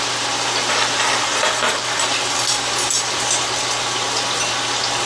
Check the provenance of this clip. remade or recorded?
recorded